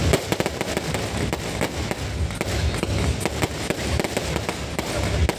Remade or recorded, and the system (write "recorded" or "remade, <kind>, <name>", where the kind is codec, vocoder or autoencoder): recorded